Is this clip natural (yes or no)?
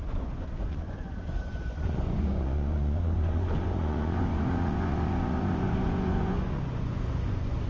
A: no